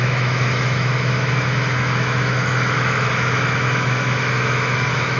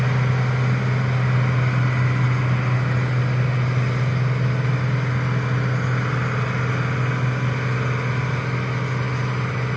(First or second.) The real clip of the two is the second